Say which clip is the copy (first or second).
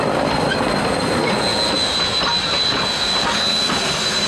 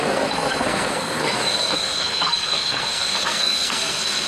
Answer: second